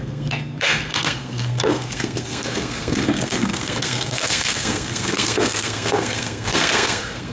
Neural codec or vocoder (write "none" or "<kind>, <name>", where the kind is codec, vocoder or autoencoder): codec, SNAC